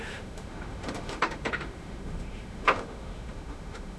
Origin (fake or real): fake